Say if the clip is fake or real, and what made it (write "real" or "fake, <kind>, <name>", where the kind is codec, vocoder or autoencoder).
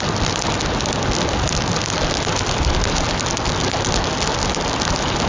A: real